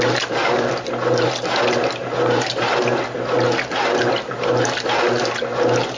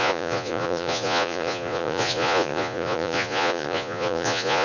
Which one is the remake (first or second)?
second